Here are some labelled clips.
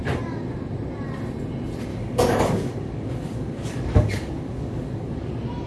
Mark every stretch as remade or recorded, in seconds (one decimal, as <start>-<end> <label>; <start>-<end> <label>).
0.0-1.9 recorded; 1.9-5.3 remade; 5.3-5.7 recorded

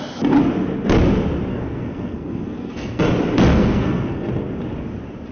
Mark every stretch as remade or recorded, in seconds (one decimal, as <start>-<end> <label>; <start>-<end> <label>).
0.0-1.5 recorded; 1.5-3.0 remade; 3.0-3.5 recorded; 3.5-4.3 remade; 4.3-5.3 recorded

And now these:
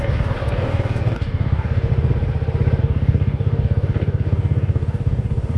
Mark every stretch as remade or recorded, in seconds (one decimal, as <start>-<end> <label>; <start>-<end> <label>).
0.0-1.9 remade; 1.9-2.8 recorded; 2.8-5.6 remade